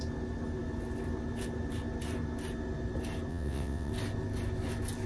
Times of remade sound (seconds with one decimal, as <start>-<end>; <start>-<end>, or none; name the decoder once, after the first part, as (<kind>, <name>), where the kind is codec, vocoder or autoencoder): 3.3-3.9 (vocoder, WaveNeXt)